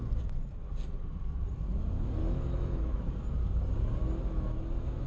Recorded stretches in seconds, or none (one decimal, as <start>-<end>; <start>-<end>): 0.0-2.2; 3.1-5.1